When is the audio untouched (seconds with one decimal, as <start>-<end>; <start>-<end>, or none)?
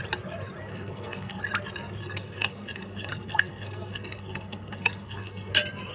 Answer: 0.0-0.7; 1.4-2.0; 5.5-5.9